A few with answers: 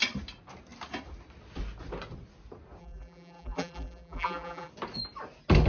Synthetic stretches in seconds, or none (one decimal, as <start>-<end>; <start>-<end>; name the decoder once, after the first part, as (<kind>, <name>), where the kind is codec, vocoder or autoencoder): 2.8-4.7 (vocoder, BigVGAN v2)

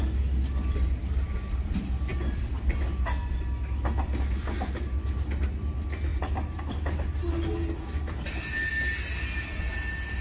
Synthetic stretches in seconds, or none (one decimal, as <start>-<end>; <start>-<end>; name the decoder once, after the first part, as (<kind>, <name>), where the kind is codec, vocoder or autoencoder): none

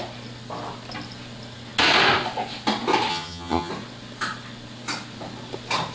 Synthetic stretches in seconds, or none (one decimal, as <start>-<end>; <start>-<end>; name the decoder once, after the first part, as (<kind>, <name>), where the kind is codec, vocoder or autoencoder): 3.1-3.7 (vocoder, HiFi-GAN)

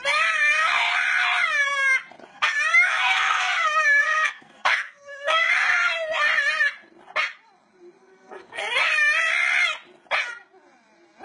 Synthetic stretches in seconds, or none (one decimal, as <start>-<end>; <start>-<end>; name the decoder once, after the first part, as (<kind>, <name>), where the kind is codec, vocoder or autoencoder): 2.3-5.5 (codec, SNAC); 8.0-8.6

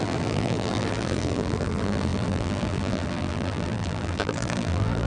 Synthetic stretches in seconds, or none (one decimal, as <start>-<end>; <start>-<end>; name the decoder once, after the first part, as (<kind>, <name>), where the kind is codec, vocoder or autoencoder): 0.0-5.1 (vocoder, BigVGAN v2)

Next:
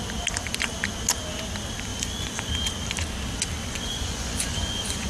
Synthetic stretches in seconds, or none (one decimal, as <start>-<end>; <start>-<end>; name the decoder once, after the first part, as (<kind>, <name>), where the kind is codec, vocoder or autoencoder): 1.9-2.5 (vocoder, Vocos); 3.6-5.1